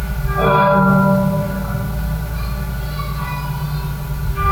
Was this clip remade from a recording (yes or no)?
no